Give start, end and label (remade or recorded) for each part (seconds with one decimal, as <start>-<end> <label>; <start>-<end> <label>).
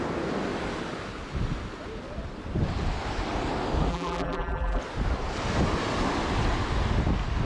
0.0-3.9 recorded; 3.9-4.8 remade; 4.8-7.5 recorded